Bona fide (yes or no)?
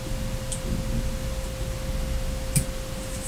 yes